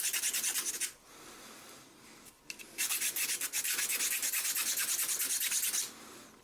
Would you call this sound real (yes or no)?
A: yes